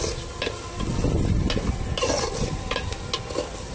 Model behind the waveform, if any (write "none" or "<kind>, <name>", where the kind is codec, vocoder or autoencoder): none